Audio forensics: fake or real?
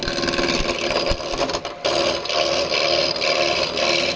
real